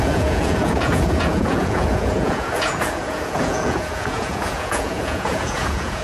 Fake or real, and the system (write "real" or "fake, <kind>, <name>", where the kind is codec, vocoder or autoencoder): fake, vocoder, Vocos